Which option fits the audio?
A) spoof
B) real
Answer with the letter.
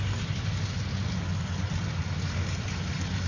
B